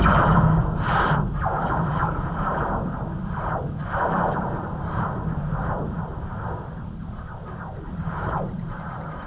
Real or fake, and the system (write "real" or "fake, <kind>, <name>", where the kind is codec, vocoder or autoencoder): fake, vocoder, BigVGAN v2